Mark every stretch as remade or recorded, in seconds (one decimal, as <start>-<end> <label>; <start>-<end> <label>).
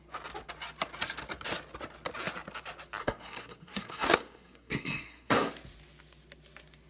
0.0-3.0 recorded; 3.0-5.5 remade; 5.5-6.9 recorded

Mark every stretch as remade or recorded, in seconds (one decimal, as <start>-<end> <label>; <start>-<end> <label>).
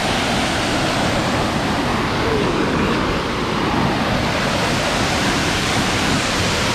0.0-1.9 recorded; 1.9-3.2 remade; 3.2-5.4 recorded; 5.4-6.3 remade; 6.3-6.7 recorded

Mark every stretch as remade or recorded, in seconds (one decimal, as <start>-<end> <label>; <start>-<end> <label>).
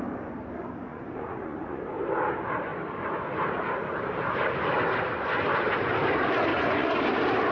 0.0-0.9 recorded; 0.9-1.8 remade; 1.8-6.5 recorded; 6.5-7.0 remade; 7.0-7.5 recorded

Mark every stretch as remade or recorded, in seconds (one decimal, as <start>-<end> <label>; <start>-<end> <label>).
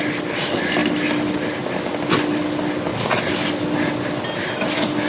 0.0-5.1 recorded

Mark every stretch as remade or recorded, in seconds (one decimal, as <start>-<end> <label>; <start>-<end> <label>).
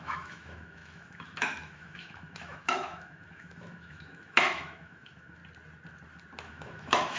0.0-5.4 remade; 5.4-6.5 recorded; 6.5-7.2 remade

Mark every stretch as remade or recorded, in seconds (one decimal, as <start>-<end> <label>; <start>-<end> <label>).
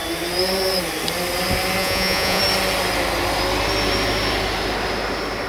0.0-1.8 recorded; 1.8-2.4 remade; 2.4-5.5 recorded